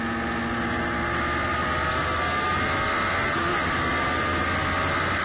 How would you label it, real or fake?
real